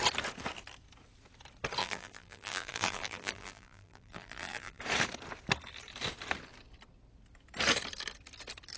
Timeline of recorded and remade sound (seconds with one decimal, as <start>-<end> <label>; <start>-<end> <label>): 0.0-1.8 recorded; 1.8-4.8 remade; 4.8-8.8 recorded